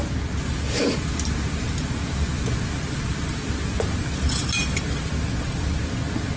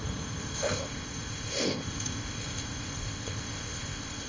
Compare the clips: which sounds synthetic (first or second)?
second